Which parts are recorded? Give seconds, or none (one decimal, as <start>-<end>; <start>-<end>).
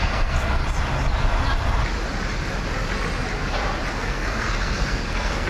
0.6-3.9